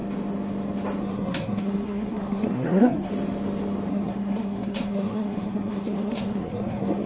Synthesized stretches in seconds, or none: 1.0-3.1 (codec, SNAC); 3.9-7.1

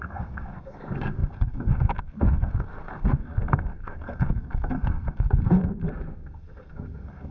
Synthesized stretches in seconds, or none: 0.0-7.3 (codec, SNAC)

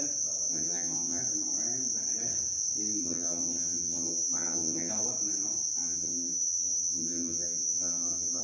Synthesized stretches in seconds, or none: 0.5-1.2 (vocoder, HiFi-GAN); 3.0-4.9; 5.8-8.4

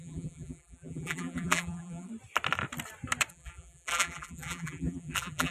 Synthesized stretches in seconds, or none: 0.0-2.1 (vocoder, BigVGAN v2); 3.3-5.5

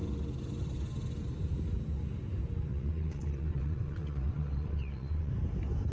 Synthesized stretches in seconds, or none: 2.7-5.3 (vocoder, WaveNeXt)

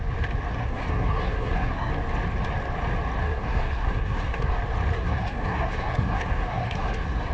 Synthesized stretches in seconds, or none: 0.5-1.9 (codec, SNAC); 3.2-4.5; 4.9-7.3

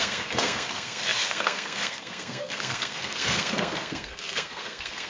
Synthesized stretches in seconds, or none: 0.0-5.1 (codec, SNAC)